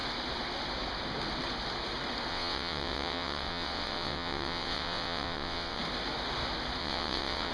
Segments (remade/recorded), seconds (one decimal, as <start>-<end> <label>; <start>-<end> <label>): 0.0-2.3 recorded; 2.3-5.8 remade; 5.8-6.8 recorded; 6.8-7.5 remade